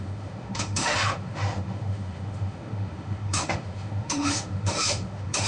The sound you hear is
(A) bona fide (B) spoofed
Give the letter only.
B